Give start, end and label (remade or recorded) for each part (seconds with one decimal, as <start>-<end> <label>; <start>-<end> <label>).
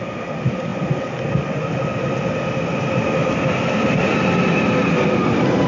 0.0-5.7 recorded